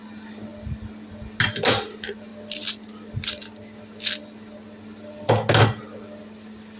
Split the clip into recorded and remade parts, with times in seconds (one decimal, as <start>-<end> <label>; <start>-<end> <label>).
0.0-6.8 recorded